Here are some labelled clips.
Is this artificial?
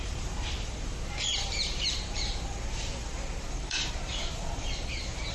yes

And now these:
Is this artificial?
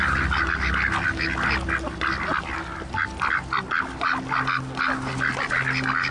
no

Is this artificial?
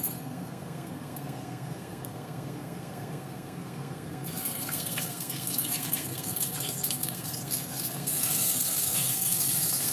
yes